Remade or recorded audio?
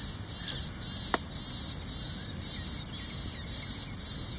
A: recorded